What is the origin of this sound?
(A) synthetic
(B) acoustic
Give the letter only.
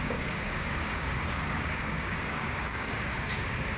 A